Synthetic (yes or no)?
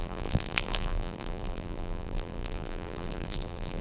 yes